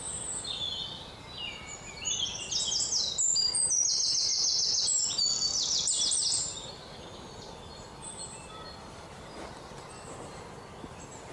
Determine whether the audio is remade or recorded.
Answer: recorded